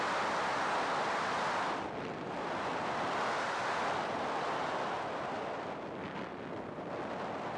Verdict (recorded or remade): recorded